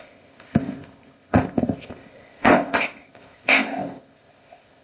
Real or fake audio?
fake